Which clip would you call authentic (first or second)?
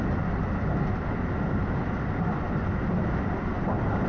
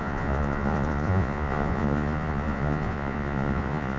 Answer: first